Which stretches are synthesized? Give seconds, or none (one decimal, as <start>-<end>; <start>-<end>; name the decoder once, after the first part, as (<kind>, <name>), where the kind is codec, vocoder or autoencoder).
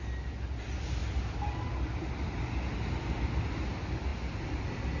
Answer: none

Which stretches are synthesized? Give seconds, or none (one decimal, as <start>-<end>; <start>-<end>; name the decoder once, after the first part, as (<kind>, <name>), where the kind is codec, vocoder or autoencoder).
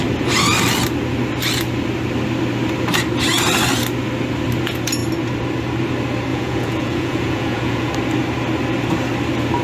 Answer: 6.3-7.9 (vocoder, Vocos)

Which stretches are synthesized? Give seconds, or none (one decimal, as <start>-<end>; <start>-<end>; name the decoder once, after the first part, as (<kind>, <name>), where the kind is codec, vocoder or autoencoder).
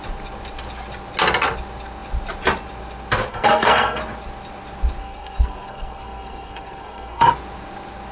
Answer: 3.3-4.0 (codec, SNAC); 5.0-7.3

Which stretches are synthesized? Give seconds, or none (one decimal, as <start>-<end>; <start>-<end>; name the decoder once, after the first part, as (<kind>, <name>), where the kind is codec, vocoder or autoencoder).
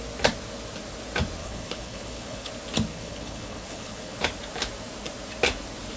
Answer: 1.4-2.5 (codec, HILCodec); 2.9-4.2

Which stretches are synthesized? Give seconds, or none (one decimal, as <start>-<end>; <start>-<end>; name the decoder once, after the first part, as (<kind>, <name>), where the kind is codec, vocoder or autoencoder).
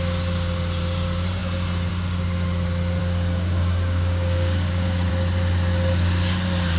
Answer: 3.0-5.1 (codec, DAC)